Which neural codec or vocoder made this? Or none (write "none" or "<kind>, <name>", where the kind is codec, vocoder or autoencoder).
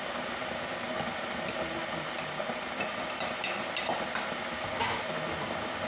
none